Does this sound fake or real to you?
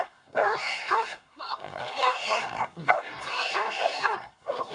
fake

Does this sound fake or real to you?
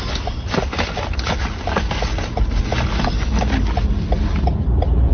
real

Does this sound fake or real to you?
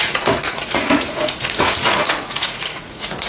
fake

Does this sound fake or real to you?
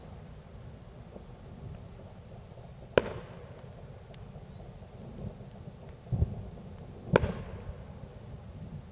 real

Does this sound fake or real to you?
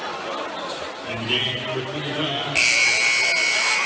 real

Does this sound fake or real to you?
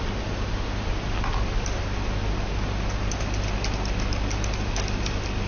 real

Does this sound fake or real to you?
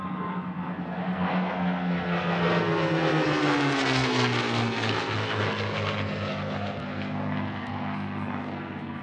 fake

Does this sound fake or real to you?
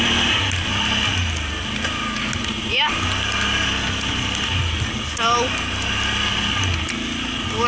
real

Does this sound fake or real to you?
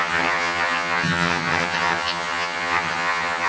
fake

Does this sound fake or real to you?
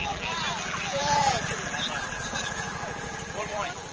fake